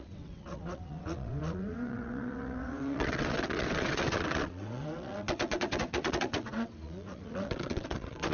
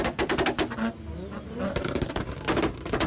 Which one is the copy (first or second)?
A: first